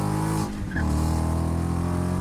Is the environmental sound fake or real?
real